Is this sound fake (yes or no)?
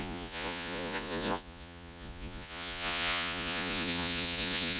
yes